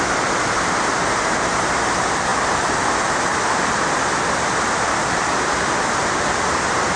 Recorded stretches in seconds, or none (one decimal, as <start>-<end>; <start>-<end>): 0.0-7.0